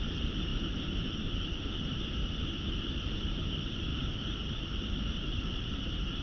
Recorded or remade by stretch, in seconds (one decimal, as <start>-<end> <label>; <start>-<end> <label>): 0.0-2.2 remade; 2.2-2.7 recorded; 2.7-6.2 remade